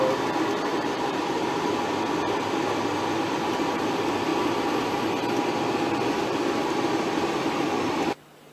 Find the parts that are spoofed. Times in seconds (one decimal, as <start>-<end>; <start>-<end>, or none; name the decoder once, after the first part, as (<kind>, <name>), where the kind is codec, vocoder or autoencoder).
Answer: 0.7-1.8 (vocoder, BigVGAN v2)